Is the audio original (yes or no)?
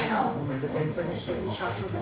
no